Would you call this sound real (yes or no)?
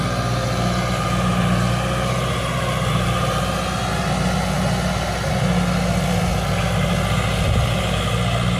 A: yes